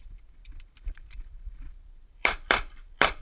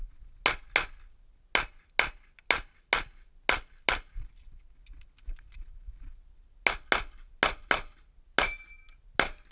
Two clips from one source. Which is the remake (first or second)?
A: first